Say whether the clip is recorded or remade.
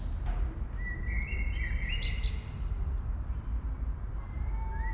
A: recorded